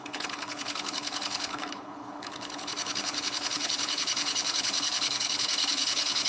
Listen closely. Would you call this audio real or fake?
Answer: fake